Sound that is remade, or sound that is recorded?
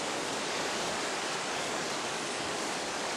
remade